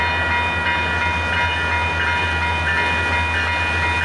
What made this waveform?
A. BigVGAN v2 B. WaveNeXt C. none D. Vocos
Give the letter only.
C